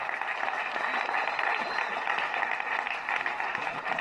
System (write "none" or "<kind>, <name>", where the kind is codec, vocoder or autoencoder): none